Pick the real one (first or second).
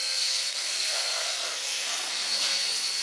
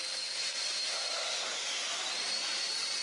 second